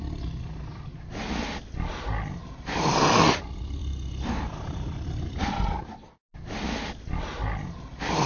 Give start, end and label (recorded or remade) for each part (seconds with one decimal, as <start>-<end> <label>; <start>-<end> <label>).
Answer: 0.0-8.3 recorded